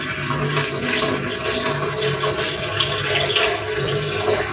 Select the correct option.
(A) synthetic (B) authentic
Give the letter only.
B